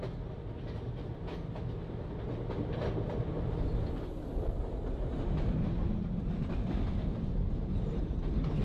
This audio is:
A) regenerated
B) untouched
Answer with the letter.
B